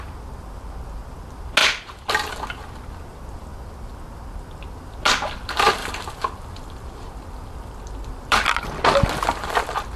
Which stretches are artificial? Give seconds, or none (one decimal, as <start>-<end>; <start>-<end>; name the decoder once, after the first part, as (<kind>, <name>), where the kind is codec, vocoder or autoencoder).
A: 1.6-2.1 (vocoder, BigVGAN v2); 5.8-7.8